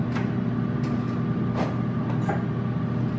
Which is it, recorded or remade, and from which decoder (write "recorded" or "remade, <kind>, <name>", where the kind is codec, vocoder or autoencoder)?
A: recorded